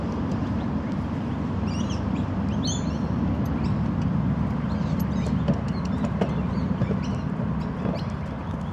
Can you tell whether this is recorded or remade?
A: recorded